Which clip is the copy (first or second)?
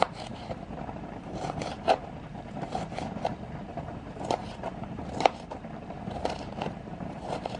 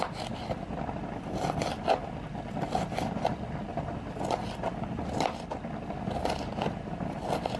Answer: first